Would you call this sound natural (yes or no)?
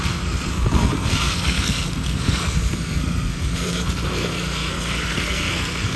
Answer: no